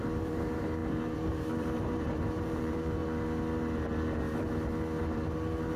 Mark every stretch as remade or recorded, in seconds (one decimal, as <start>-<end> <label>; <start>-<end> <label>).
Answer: 0.0-3.0 remade; 3.0-5.0 recorded; 5.0-5.8 remade